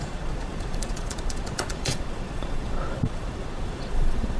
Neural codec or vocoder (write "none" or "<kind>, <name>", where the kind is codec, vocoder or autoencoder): vocoder, Vocos